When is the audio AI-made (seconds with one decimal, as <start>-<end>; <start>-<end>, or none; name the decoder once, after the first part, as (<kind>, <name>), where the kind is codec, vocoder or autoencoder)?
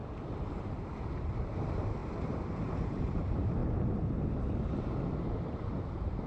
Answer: 0.6-3.6 (vocoder, BigVGAN v2); 5.1-6.3